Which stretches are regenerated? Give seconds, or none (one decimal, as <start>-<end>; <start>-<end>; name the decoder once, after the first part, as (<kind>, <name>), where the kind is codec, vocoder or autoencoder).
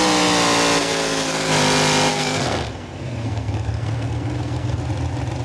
0.8-1.5 (codec, SNAC); 2.1-4.8